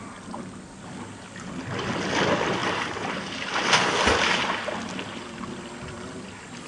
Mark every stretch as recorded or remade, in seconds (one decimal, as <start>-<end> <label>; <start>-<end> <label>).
0.0-2.6 recorded; 2.6-3.2 remade; 3.2-6.7 recorded